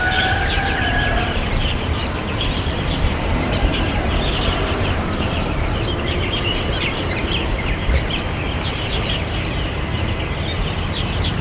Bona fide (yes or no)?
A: no